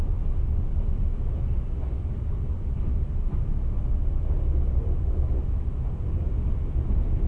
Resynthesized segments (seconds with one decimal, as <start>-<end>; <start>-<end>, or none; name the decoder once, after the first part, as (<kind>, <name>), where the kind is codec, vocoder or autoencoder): none